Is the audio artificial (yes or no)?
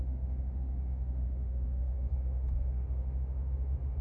yes